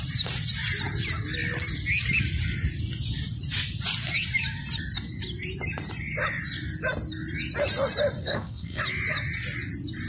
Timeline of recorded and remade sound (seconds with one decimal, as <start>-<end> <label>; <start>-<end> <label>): 0.0-8.2 recorded; 8.2-8.8 remade; 8.8-10.1 recorded